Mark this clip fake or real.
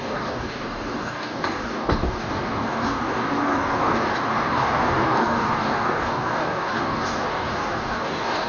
fake